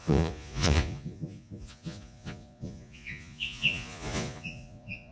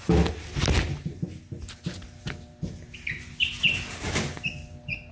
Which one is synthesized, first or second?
first